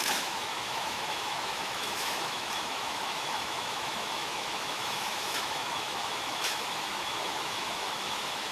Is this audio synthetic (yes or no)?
yes